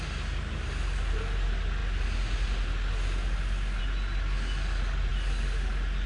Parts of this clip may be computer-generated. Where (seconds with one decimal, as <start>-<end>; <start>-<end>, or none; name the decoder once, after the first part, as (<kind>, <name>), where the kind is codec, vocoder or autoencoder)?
none

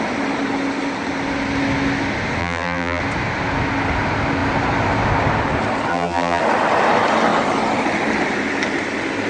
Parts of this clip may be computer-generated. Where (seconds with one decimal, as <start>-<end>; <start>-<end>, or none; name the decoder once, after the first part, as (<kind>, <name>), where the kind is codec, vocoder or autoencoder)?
2.4-3.0 (vocoder, BigVGAN v2); 5.9-6.4

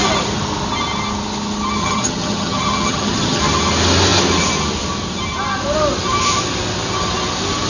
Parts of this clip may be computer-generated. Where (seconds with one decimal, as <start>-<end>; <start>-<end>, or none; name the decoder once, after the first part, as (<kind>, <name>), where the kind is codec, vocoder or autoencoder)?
1.8-3.4 (vocoder, HiFi-GAN)

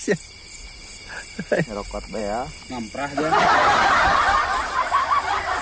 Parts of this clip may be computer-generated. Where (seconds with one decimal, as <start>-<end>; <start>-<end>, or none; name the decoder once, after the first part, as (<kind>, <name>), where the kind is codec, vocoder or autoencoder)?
none

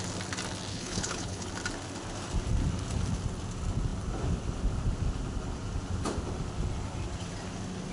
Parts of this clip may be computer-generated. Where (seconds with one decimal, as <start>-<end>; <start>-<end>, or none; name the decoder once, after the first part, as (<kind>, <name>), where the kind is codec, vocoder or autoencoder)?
0.7-1.5 (codec, HILCodec)

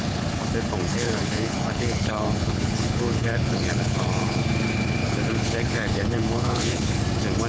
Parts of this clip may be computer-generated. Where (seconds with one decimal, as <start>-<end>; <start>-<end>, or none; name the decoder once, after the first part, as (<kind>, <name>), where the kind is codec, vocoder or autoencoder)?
0.9-4.4 (codec, HILCodec); 5.0-7.0